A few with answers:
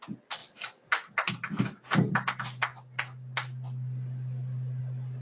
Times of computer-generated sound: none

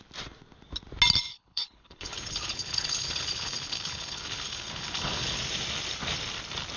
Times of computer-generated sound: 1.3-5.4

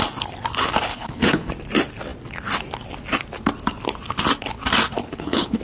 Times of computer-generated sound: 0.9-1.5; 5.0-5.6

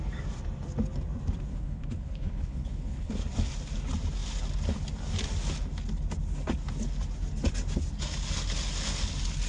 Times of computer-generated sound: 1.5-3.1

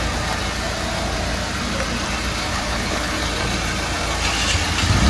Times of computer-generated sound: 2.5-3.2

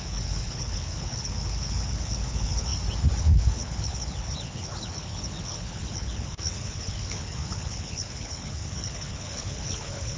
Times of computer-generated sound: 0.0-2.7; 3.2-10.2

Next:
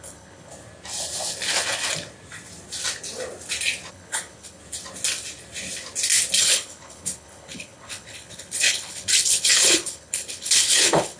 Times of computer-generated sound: 0.0-0.5; 3.9-4.6; 6.4-11.2